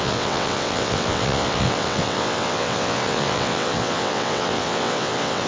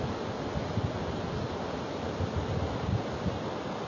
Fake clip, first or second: first